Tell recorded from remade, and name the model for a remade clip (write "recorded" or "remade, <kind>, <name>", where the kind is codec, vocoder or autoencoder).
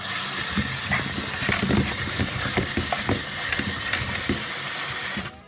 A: recorded